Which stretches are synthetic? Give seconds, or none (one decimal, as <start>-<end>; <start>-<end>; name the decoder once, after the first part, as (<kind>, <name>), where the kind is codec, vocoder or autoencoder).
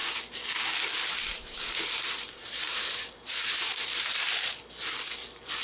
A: 1.3-4.6 (vocoder, BigVGAN v2)